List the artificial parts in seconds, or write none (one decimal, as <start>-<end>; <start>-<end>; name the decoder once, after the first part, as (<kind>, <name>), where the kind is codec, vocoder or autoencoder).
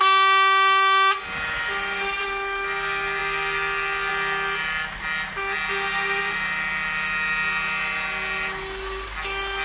none